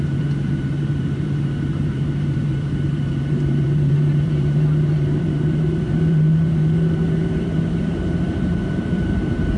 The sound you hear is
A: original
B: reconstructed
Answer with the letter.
B